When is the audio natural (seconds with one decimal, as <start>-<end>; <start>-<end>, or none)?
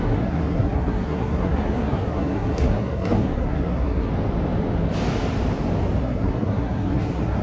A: 4.1-6.0